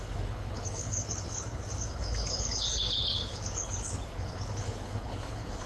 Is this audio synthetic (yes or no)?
yes